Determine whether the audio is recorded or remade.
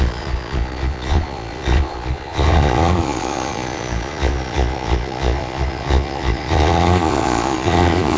remade